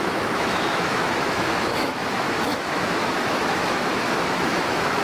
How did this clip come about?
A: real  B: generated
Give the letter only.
B